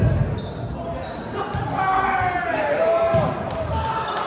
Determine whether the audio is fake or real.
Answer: real